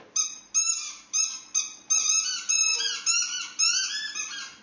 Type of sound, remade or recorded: recorded